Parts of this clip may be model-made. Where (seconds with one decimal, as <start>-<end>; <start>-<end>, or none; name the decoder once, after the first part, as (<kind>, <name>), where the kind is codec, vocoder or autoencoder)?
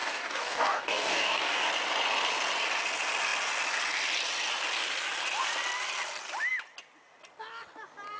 0.0-1.7 (codec, DAC)